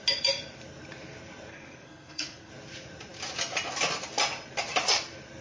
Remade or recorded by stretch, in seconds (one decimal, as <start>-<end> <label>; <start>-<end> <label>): 0.0-1.5 recorded; 1.5-2.5 remade; 2.5-5.4 recorded